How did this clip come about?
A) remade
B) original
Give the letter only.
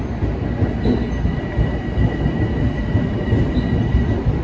B